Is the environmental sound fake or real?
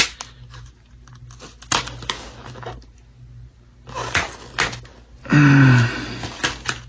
real